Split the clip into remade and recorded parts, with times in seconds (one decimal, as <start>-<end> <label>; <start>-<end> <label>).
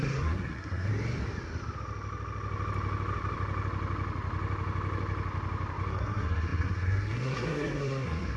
0.0-0.9 remade; 0.9-5.9 recorded; 5.9-8.4 remade